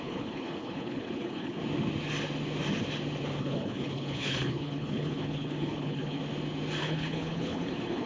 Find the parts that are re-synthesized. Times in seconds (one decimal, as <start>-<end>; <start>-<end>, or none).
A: 0.0-1.6; 3.4-6.2; 6.8-8.1